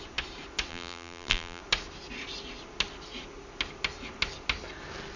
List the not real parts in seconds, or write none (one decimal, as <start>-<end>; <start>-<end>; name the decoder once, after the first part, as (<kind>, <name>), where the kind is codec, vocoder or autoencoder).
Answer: 0.7-1.6 (vocoder, BigVGAN v2)